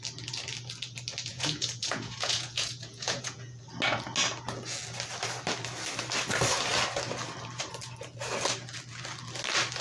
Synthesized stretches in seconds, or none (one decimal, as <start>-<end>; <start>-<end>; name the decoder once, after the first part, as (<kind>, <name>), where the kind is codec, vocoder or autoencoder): 1.3-3.6 (vocoder, Vocos)